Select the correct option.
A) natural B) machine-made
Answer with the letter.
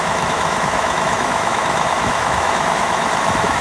B